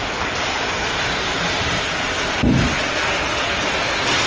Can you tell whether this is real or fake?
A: real